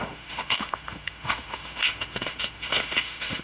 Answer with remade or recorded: remade